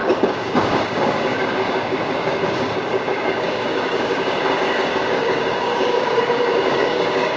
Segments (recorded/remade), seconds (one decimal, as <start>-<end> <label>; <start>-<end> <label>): 0.0-7.4 remade